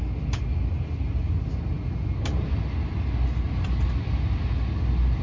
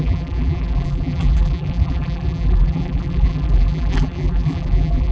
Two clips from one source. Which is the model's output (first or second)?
second